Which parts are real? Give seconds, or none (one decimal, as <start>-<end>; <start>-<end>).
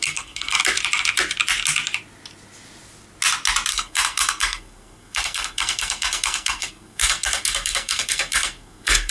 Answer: 0.6-3.7